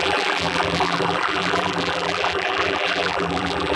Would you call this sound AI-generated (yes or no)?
yes